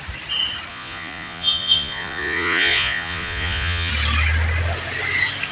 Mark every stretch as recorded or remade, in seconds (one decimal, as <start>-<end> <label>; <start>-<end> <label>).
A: 0.0-0.7 recorded; 0.7-3.9 remade; 3.9-5.5 recorded